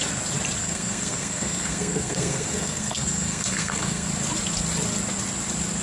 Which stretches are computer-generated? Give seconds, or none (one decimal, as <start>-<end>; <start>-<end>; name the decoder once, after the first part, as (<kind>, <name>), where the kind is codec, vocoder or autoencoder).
0.6-4.1 (codec, SNAC)

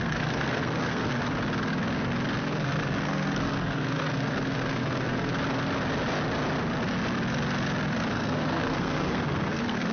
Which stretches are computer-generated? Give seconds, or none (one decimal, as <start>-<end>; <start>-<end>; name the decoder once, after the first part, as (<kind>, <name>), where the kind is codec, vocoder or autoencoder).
0.0-1.2 (codec, SNAC); 2.4-5.3; 8.1-9.9

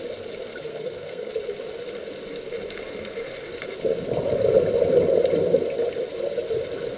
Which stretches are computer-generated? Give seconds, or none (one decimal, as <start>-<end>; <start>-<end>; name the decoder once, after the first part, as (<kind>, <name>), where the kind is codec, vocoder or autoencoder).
0.7-1.3 (codec, SNAC)

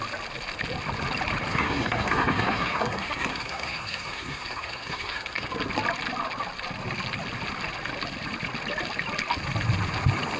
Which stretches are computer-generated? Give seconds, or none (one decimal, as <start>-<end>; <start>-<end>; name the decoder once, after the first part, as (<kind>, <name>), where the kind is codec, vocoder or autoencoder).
1.5-5.5 (codec, SNAC)

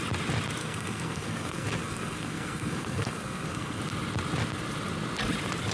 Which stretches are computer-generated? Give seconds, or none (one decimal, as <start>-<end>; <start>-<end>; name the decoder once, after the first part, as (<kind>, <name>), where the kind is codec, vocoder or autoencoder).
0.6-3.8 (codec, SNAC)

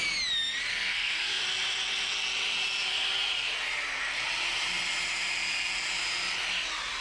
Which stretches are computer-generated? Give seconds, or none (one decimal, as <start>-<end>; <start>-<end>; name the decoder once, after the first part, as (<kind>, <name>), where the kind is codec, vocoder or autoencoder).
0.7-1.4 (codec, SNAC)

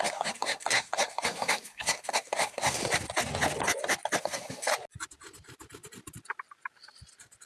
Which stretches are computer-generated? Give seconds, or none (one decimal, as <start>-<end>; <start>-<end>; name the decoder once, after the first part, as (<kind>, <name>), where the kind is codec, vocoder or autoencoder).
0.0-2.8 (codec, SNAC); 4.2-4.7